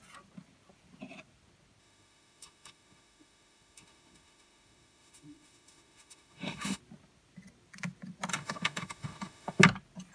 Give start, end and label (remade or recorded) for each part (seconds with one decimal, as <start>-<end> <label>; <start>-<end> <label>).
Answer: 0.0-1.8 recorded; 1.8-6.8 remade; 6.8-8.3 recorded; 8.3-9.6 remade; 9.6-10.1 recorded